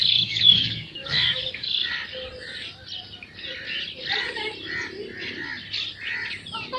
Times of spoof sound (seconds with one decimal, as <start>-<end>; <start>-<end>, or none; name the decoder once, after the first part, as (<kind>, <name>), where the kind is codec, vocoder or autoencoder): 0.0-1.9 (codec, DAC)